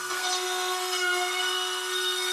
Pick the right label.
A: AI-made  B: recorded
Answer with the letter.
A